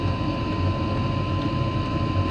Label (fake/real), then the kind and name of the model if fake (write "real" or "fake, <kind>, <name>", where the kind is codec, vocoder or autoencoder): real